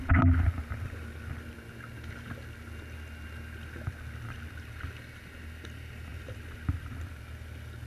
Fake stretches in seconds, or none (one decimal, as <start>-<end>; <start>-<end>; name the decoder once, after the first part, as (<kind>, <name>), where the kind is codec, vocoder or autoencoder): 6.1-7.2 (vocoder, BigVGAN v2)